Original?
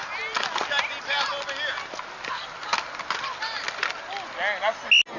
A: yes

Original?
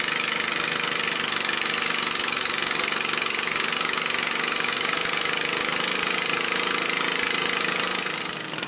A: yes